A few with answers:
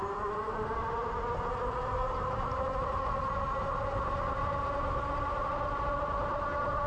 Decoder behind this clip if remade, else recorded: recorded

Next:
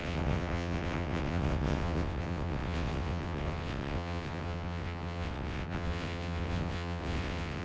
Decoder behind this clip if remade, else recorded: remade, vocoder, WaveNeXt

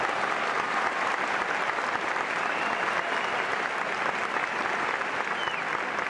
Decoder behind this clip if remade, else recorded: recorded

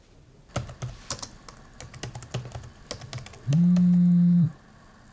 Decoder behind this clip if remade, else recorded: recorded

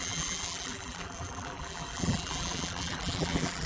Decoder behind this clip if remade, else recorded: remade, vocoder, BigVGAN v2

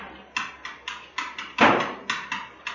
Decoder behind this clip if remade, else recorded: recorded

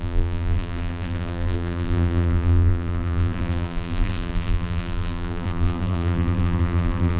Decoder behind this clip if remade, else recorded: remade, vocoder, BigVGAN v2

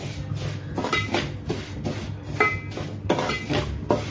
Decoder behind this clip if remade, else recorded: recorded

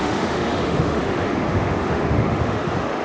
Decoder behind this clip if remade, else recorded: remade, autoencoder, DAC-VAE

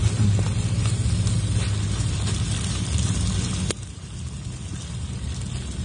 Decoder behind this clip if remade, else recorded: recorded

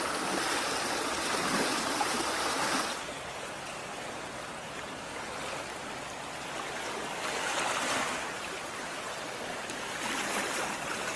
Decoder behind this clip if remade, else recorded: recorded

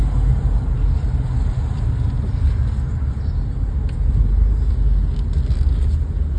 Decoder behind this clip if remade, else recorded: recorded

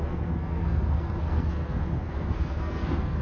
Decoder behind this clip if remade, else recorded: remade, codec, SNAC